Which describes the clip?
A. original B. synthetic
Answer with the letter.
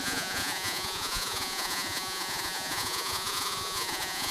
B